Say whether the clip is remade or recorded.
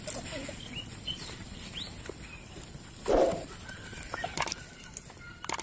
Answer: recorded